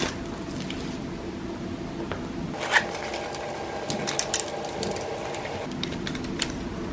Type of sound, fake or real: real